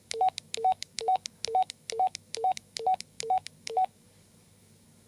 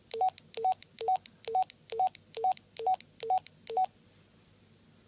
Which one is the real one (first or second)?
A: second